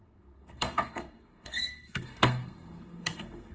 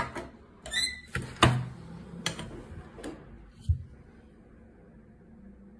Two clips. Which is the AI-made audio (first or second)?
first